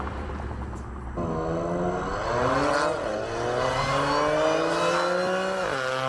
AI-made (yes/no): no